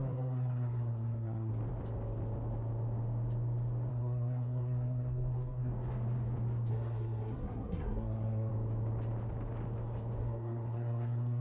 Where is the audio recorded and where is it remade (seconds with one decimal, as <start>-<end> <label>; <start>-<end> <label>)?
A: 0.0-1.5 remade; 1.5-3.9 recorded; 3.9-5.7 remade; 5.7-6.7 recorded; 6.7-8.5 remade; 8.5-10.2 recorded; 10.2-11.4 remade